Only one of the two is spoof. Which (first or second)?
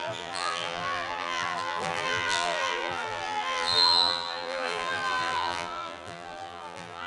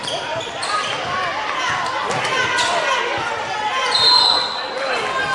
first